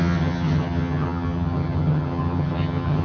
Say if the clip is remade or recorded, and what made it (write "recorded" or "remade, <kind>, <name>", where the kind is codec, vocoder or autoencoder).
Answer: remade, vocoder, HiFi-GAN